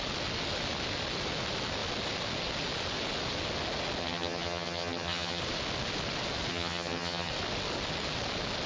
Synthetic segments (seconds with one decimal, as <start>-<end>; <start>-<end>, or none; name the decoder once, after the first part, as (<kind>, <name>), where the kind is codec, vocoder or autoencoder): 4.0-5.4 (vocoder, HiFi-GAN); 6.5-7.3

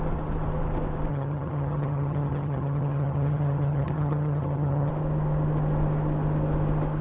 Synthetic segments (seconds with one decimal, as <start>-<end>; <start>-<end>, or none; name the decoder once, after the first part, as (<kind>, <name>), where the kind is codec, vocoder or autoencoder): 1.1-4.9 (vocoder, HiFi-GAN)

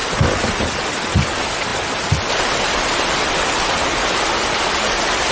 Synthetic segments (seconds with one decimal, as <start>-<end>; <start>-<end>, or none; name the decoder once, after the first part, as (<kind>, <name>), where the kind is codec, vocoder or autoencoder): none

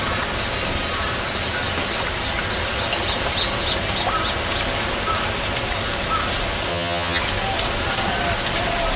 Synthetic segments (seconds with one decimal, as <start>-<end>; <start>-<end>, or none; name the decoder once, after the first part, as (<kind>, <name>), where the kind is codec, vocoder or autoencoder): 6.7-7.2 (vocoder, HiFi-GAN)

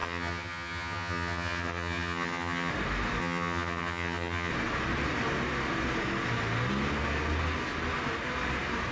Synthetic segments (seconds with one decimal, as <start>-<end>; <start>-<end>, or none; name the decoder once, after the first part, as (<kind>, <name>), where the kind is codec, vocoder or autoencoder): 0.0-2.7 (vocoder, HiFi-GAN); 3.2-4.5

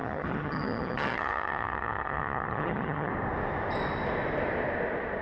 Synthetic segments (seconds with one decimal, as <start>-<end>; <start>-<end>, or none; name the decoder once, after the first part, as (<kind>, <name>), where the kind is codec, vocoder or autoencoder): 0.0-3.1 (vocoder, HiFi-GAN)

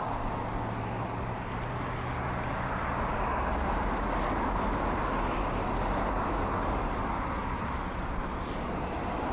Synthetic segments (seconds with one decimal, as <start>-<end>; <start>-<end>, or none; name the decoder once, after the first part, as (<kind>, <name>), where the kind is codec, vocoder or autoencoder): none